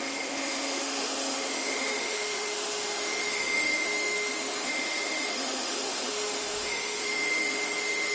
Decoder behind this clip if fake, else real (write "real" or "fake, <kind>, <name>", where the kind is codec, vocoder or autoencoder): fake, autoencoder, DAC-VAE